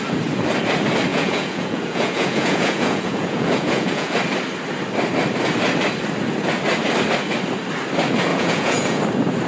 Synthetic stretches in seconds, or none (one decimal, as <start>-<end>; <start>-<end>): 1.1-4.1; 8.3-9.0